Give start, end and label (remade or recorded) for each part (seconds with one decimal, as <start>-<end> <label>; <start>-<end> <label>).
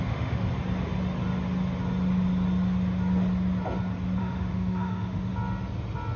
0.0-0.5 remade; 0.5-4.2 recorded; 4.2-5.3 remade; 5.3-6.2 recorded